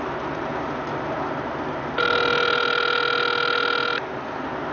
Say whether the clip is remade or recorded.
recorded